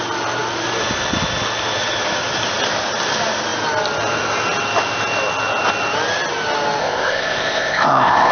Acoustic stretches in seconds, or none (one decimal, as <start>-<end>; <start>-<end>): 0.0-6.8